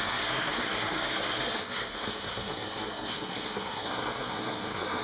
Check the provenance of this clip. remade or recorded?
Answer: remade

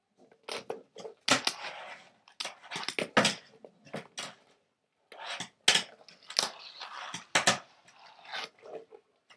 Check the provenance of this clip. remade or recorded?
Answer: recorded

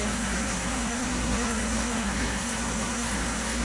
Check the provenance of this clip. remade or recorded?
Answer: remade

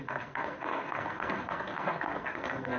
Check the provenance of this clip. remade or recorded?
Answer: remade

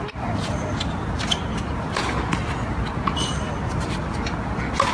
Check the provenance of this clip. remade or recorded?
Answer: recorded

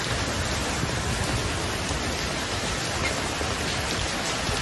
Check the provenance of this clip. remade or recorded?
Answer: recorded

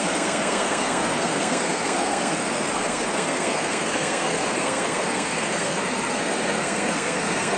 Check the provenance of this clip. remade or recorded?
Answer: remade